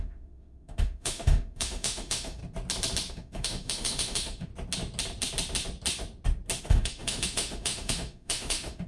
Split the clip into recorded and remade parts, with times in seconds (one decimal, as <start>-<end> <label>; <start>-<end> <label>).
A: 0.0-2.4 remade; 2.4-3.1 recorded; 3.1-4.5 remade; 4.5-6.6 recorded; 6.6-8.9 remade